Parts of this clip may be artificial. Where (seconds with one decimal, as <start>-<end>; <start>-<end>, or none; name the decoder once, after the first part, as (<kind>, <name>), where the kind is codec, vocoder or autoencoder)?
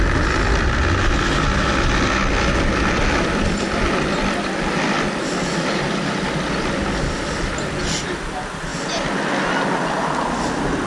none